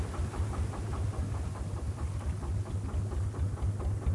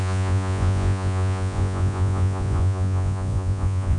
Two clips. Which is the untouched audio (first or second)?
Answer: first